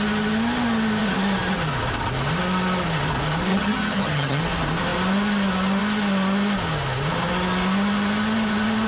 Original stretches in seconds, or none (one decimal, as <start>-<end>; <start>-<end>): 0.0-3.5; 4.4-8.9